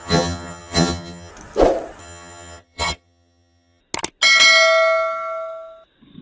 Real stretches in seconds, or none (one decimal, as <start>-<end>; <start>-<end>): 1.3-2.0; 3.8-6.2